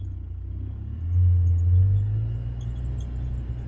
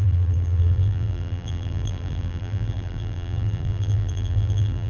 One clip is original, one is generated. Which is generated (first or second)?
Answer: second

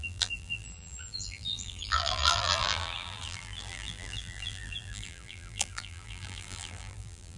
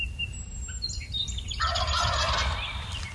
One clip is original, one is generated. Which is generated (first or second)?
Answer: first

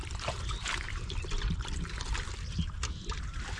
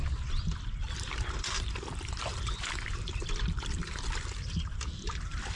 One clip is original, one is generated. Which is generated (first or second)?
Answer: second